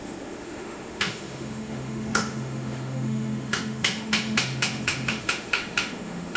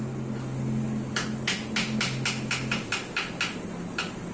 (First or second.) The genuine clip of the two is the second